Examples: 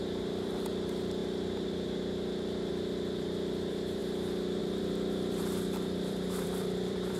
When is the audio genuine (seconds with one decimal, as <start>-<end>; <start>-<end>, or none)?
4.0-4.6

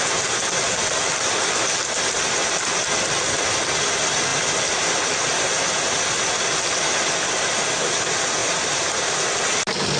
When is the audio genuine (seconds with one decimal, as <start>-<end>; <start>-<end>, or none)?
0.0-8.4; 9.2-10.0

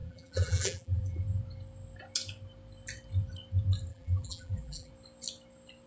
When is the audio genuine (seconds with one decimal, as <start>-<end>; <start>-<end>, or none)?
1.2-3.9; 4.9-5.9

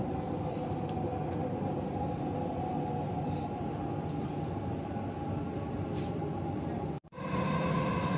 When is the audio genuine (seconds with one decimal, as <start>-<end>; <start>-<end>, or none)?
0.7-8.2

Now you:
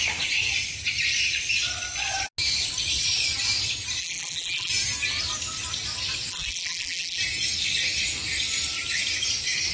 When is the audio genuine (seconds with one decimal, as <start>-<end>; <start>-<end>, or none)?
0.0-4.0; 4.7-6.3; 7.2-9.7

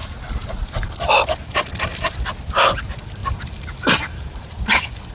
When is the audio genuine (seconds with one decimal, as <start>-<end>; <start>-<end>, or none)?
0.0-0.7

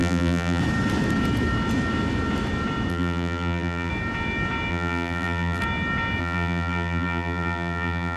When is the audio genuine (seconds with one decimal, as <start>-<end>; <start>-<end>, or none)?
0.6-2.9; 3.9-4.7; 5.6-6.2

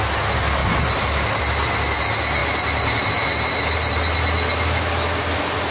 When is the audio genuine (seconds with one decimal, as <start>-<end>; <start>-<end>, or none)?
0.0-5.7